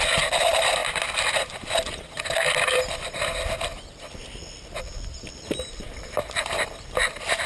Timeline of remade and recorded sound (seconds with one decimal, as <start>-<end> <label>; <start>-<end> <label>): 0.0-7.5 recorded